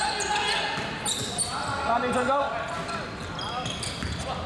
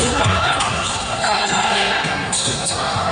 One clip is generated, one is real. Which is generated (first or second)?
second